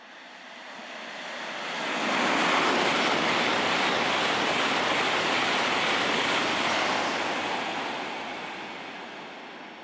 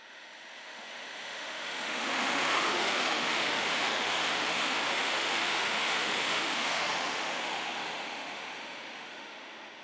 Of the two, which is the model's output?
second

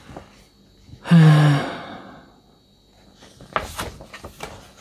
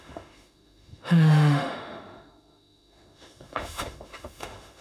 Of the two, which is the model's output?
second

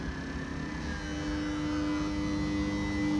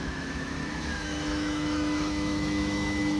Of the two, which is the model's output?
second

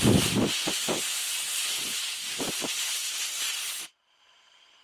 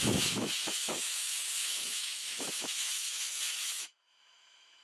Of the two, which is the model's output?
second